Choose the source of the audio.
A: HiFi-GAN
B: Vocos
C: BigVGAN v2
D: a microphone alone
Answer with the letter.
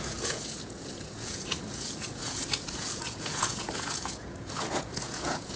B